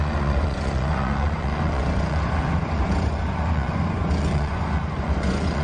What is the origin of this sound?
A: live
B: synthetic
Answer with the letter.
B